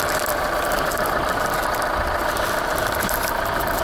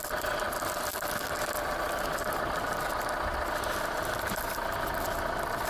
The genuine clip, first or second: second